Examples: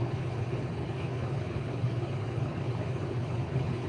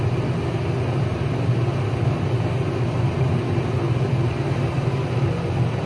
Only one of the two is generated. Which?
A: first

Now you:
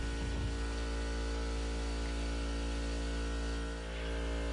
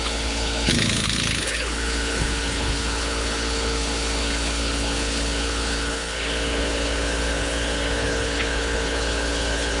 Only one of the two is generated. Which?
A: second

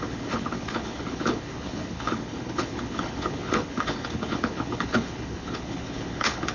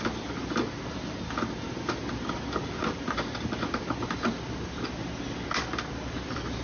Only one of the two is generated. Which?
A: first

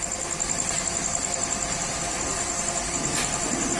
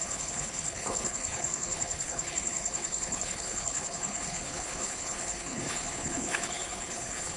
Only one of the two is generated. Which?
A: second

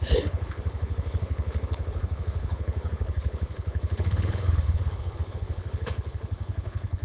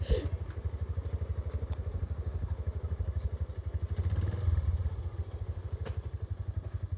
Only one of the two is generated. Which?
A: first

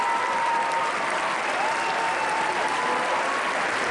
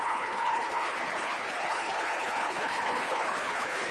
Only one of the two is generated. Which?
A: second